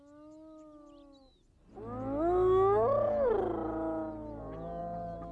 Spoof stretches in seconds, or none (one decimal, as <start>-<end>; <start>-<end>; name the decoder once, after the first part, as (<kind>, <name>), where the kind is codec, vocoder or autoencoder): none